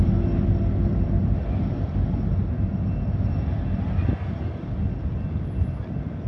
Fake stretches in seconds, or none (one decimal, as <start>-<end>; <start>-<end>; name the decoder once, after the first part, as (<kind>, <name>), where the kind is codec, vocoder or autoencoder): none